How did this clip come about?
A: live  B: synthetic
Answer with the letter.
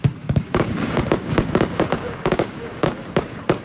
B